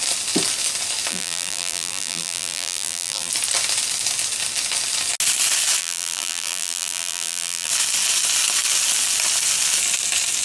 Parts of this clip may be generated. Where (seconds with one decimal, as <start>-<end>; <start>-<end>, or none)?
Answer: 1.1-3.3; 5.8-7.7